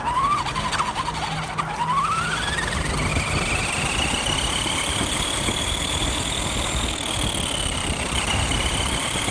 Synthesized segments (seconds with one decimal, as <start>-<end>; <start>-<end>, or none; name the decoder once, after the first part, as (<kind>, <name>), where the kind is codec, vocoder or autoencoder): none